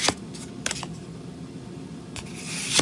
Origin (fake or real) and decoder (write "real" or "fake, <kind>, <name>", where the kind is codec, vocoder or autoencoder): real